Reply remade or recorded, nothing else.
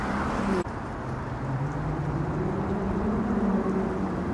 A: recorded